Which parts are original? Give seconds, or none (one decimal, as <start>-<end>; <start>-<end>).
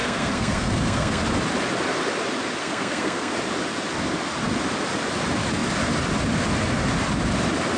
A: 1.2-2.6; 3.3-7.8